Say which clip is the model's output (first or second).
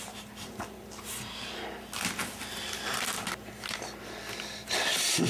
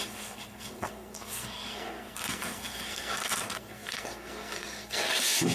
second